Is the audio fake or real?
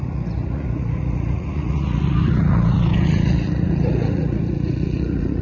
fake